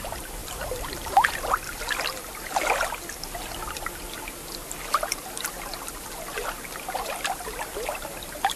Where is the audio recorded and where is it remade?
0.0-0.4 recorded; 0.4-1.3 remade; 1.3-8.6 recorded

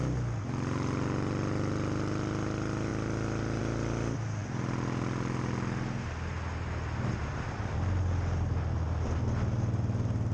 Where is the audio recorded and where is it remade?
0.0-2.9 recorded; 2.9-3.6 remade; 3.6-10.3 recorded

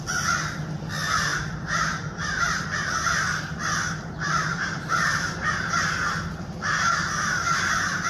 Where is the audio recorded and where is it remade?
0.0-1.3 recorded; 1.3-3.4 remade; 3.4-4.5 recorded; 4.5-5.7 remade; 5.7-8.1 recorded

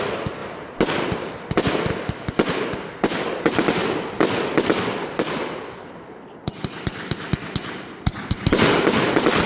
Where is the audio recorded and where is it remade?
0.0-9.5 recorded

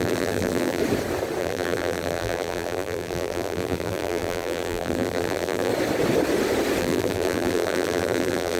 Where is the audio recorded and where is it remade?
0.0-0.8 remade; 0.8-1.4 recorded; 1.4-5.7 remade; 5.7-6.8 recorded; 6.8-8.6 remade

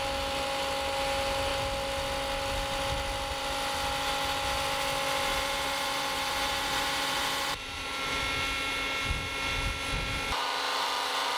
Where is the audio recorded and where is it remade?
0.0-5.3 recorded; 5.3-8.2 remade; 8.2-11.4 recorded